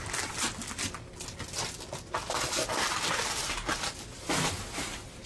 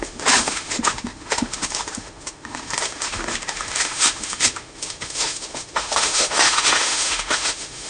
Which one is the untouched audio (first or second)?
first